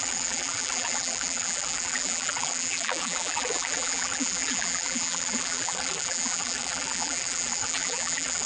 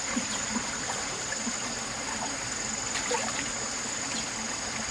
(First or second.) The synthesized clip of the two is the first